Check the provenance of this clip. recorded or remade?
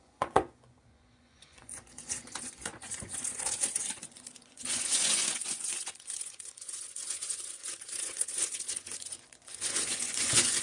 remade